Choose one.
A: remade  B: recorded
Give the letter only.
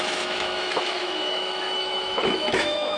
A